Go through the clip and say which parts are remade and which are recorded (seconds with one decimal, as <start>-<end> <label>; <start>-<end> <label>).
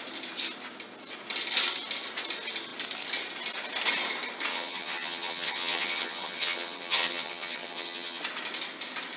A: 0.0-4.5 recorded; 4.5-8.2 remade; 8.2-9.2 recorded